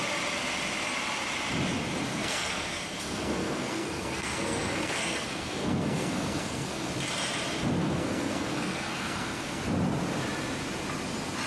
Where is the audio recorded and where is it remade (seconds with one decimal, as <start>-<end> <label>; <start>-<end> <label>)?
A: 0.0-2.1 recorded; 2.1-6.9 remade; 6.9-7.8 recorded; 7.8-9.6 remade; 9.6-11.5 recorded